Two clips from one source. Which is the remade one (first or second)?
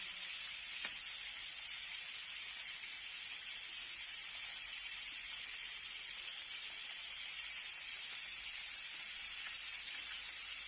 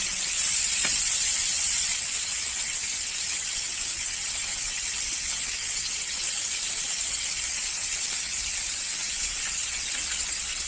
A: second